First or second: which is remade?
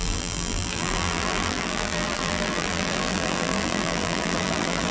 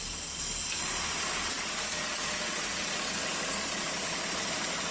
first